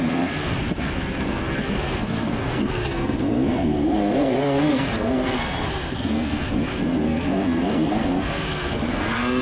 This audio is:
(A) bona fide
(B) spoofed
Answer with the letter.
B